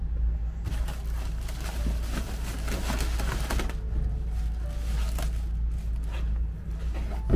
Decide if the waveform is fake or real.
real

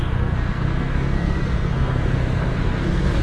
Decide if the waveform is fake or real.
fake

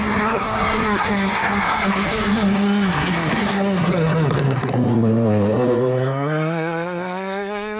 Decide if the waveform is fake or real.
fake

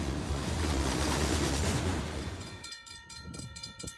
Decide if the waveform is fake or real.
fake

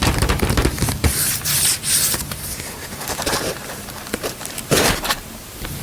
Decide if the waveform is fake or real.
fake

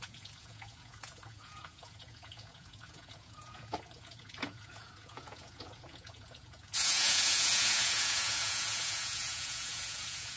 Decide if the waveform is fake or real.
fake